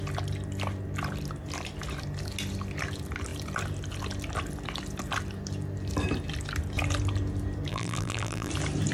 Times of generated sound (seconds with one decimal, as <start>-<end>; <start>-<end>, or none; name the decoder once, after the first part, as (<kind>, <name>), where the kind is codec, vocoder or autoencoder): 7.7-8.5 (vocoder, BigVGAN v2)